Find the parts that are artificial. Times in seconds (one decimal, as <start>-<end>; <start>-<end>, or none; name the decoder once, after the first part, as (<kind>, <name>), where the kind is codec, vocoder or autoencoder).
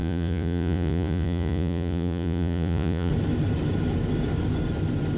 0.0-3.1 (vocoder, Vocos)